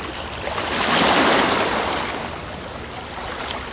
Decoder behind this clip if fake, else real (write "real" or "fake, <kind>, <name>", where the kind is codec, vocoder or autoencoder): real